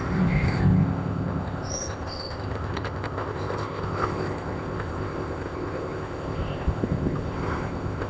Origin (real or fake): fake